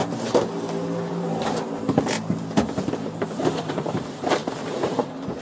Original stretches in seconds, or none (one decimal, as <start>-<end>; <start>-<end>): 0.0-1.1